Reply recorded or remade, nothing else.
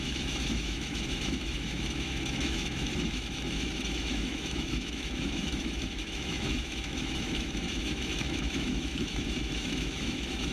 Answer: remade